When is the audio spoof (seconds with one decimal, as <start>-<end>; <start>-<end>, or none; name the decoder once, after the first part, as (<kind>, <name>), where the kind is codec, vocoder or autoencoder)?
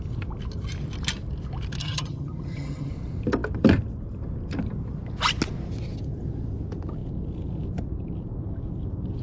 1.8-2.9 (vocoder, HiFi-GAN)